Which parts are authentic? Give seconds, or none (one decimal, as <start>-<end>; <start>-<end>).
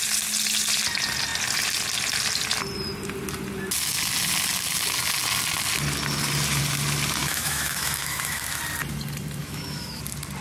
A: 0.0-7.2; 8.6-9.4; 10.0-10.4